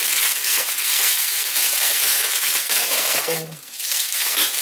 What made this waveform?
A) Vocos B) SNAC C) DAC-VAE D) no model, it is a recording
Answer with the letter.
B